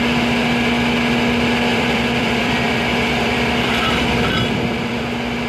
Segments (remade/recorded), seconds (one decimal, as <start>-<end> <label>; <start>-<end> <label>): 0.0-1.7 recorded; 1.7-5.0 remade; 5.0-5.5 recorded